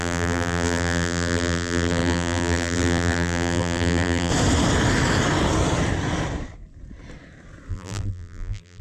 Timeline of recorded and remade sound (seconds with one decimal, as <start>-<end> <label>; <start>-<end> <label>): 0.0-4.3 remade; 4.3-7.7 recorded; 7.7-8.8 remade